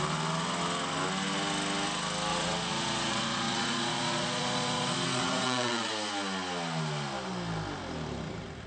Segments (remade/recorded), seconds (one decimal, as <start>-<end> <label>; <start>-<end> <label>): 0.0-2.3 recorded; 2.3-5.9 remade; 5.9-8.7 recorded